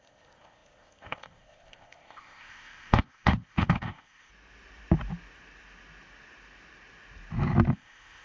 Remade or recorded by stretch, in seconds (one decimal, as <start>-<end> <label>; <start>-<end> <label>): 0.0-4.3 remade; 4.3-7.7 recorded; 7.7-8.2 remade